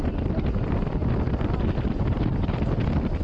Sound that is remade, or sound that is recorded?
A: recorded